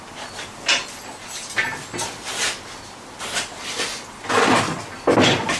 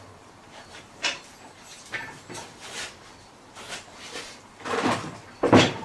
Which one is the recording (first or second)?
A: first